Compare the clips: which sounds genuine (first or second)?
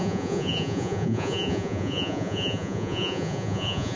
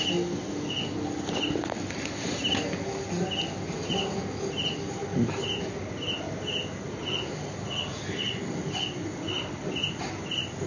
second